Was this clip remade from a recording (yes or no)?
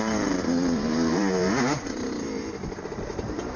yes